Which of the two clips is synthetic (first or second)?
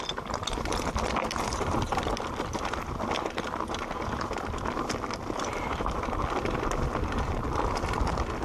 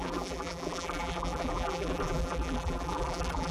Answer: second